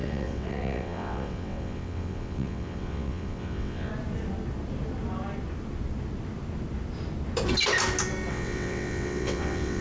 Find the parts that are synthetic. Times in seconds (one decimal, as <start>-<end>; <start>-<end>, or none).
0.0-3.9; 8.3-9.8